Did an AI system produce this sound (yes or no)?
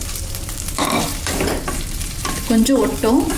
yes